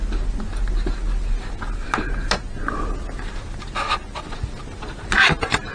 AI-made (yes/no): no